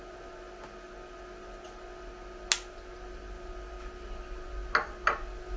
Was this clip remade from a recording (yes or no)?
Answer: no